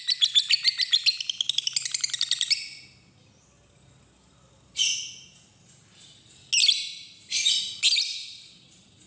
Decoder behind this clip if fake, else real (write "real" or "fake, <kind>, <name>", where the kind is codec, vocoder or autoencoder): real